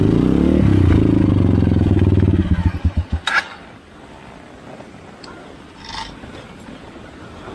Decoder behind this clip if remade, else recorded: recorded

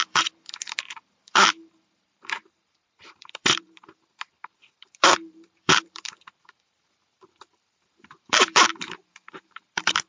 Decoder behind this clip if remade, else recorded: remade, vocoder, BigVGAN v2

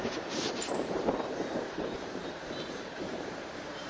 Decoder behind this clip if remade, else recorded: remade, vocoder, BigVGAN v2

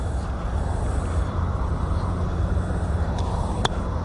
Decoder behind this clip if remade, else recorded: remade, vocoder, BigVGAN v2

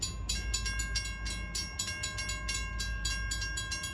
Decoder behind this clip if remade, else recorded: recorded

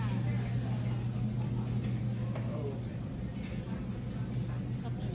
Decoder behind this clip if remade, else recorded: recorded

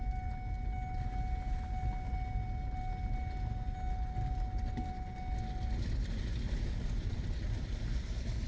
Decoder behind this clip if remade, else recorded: recorded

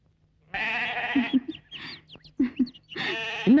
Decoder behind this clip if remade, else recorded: recorded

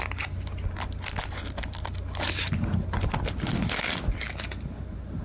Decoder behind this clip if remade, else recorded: recorded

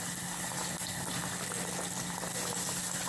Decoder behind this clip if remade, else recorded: recorded